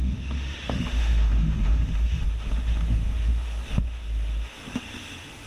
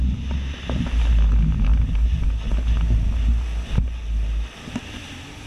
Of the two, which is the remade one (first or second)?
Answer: first